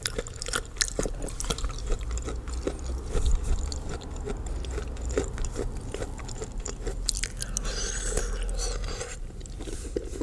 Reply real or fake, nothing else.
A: real